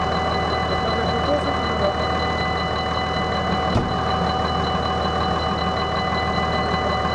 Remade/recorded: recorded